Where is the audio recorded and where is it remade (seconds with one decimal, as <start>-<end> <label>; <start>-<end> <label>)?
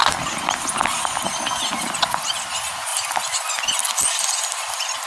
0.0-5.1 recorded